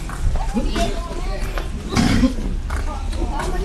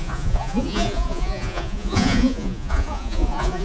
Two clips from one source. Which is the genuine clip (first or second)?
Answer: first